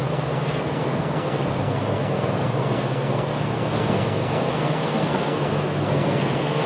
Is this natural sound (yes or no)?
no